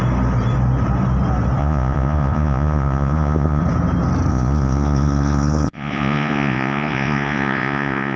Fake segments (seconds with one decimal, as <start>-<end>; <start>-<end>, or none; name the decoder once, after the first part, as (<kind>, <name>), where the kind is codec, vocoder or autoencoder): 1.6-3.6 (vocoder, Vocos); 4.3-8.2